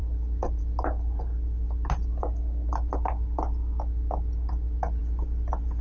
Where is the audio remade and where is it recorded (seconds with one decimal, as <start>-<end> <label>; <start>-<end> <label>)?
0.0-5.8 recorded